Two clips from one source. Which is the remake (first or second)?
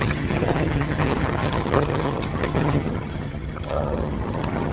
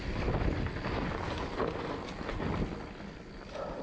first